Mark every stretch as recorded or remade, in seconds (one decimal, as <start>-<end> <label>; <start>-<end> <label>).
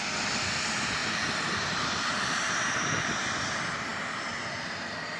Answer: 0.0-1.0 recorded; 1.0-3.2 remade; 3.2-5.2 recorded